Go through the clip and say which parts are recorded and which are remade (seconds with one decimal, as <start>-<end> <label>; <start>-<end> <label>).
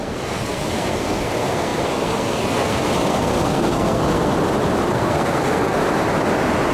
0.0-4.3 remade; 4.3-4.9 recorded; 4.9-5.8 remade; 5.8-6.7 recorded